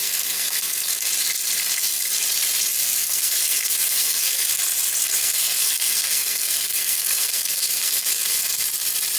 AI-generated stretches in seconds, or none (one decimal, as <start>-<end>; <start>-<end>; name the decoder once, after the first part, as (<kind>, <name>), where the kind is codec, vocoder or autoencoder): 0.0-1.1 (codec, SNAC); 2.8-4.6; 5.0-8.6